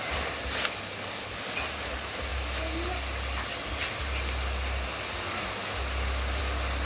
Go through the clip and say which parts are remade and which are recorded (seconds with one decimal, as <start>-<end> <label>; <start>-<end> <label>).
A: 0.0-6.9 recorded